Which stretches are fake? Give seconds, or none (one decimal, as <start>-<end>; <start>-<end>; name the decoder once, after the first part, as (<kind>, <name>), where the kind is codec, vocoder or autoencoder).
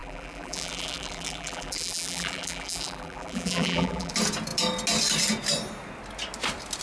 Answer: 0.0-4.1 (vocoder, BigVGAN v2)